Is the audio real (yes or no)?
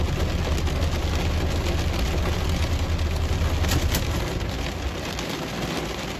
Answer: yes